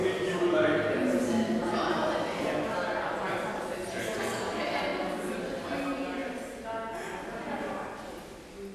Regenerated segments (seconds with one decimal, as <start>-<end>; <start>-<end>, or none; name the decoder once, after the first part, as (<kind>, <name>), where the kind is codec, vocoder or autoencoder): none